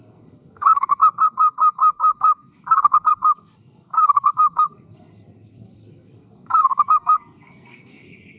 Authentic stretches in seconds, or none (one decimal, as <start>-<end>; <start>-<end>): none